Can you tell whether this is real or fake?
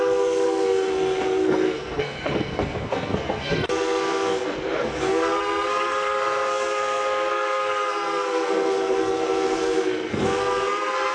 fake